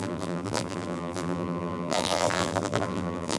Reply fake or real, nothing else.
fake